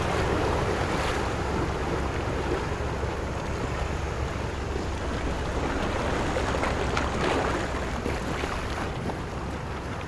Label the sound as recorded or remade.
recorded